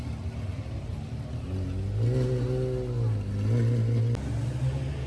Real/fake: real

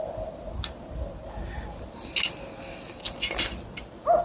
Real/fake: real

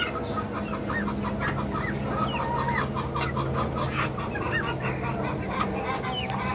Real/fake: real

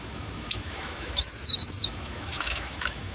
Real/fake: fake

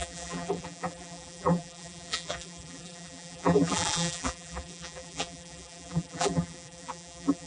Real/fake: fake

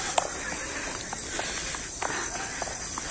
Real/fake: fake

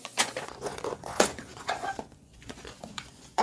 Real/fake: fake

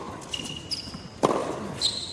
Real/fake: real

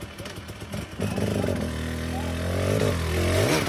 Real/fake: real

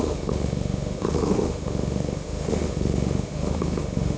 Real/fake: fake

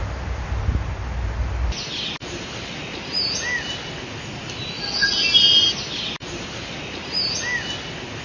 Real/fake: real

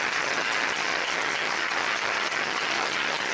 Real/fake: fake